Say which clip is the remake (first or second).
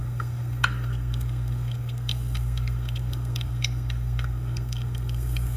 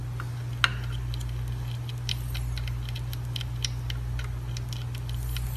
first